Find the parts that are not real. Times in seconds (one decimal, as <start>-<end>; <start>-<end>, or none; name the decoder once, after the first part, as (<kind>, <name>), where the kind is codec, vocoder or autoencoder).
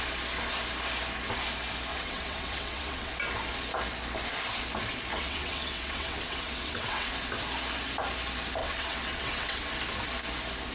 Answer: 1.9-3.1 (vocoder, WaveNeXt); 5.1-7.1; 8.6-9.7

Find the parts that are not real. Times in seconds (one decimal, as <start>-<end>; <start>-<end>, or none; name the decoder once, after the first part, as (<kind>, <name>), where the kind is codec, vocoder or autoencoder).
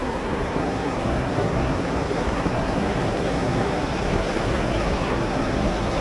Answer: 0.0-6.0 (codec, SNAC)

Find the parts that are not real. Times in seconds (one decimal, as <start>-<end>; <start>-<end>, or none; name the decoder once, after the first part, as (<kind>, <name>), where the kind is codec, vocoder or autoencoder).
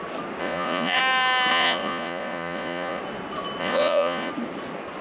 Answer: 0.4-1.0 (vocoder, Vocos); 1.5-3.0; 3.6-4.3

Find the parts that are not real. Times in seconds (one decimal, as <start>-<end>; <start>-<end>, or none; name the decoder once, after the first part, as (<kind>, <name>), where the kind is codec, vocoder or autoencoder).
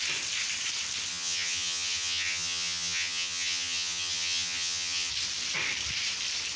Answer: 1.1-5.1 (vocoder, HiFi-GAN)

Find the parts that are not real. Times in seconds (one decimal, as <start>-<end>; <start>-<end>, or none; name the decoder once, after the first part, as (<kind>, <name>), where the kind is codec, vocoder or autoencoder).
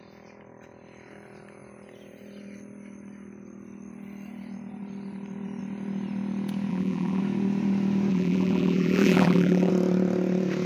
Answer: 6.7-7.2 (vocoder, BigVGAN v2); 8.1-9.7